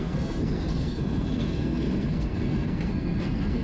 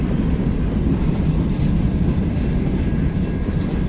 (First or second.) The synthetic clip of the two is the first